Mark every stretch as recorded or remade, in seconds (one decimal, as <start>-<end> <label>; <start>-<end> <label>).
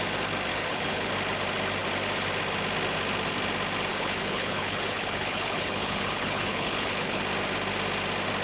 0.0-0.5 recorded; 0.5-1.1 remade; 1.1-3.9 recorded; 3.9-7.2 remade; 7.2-8.4 recorded